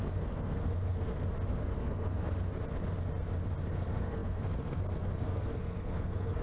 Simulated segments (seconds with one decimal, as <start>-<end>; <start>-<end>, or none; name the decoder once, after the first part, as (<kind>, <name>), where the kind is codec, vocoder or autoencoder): 0.0-1.1 (codec, SNAC); 1.6-2.5; 3.7-6.4